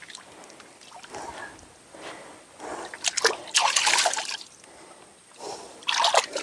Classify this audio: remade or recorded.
recorded